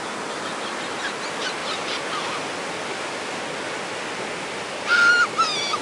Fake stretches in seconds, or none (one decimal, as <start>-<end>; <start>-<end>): none